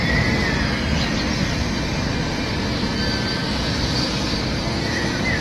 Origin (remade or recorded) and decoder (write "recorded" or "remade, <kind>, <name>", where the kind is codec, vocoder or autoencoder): recorded